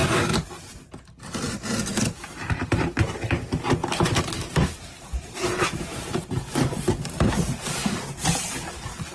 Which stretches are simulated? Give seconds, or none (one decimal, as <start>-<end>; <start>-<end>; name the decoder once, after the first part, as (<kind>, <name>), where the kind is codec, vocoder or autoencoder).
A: 3.8-7.3 (vocoder, BigVGAN v2)